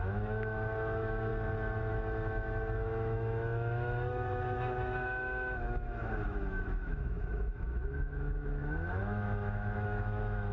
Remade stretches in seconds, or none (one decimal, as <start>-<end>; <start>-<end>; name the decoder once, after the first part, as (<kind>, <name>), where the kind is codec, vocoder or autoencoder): 0.0-1.3 (autoencoder, DAC-VAE); 1.9-10.5